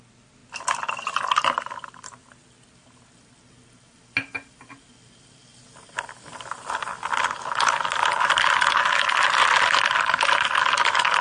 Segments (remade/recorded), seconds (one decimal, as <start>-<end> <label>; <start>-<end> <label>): 0.0-11.2 recorded

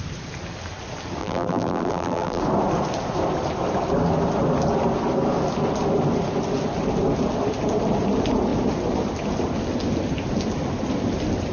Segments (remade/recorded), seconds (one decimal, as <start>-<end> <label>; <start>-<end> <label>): 0.0-1.2 recorded; 1.2-2.4 remade; 2.4-11.5 recorded

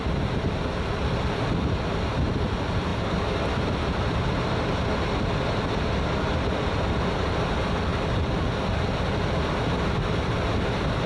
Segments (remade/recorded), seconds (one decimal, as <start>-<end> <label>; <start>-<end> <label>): 0.0-11.1 recorded

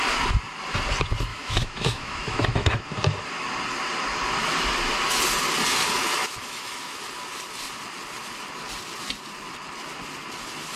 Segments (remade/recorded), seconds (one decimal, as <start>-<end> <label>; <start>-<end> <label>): 0.0-1.3 recorded; 1.3-2.8 remade; 2.8-6.2 recorded; 6.2-7.0 remade; 7.0-10.8 recorded